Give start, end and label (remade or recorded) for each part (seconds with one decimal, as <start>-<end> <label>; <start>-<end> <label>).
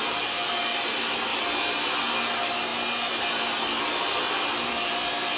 0.0-5.4 recorded